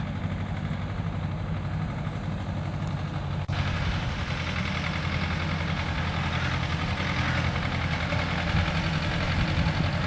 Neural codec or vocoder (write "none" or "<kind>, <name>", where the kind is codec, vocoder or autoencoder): none